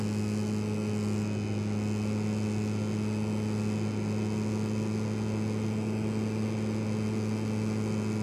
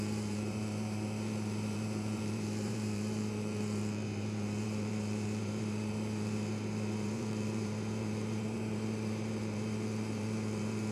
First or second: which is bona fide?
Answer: first